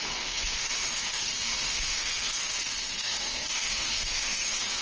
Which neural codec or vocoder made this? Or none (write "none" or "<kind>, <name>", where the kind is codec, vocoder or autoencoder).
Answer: codec, SNAC